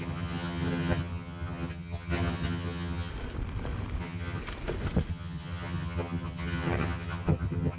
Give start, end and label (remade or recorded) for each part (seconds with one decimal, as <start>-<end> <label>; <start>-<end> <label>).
0.0-3.1 remade; 3.1-4.0 recorded; 4.0-4.4 remade; 4.4-5.1 recorded; 5.1-7.8 remade